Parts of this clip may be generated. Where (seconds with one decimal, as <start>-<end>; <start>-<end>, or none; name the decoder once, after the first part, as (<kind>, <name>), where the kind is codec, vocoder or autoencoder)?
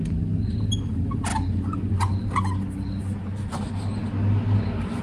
none